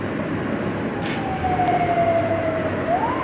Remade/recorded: recorded